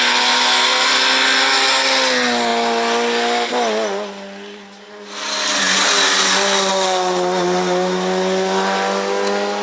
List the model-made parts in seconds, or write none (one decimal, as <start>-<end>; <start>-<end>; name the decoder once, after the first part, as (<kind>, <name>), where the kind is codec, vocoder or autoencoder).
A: none